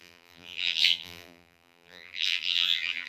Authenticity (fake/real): fake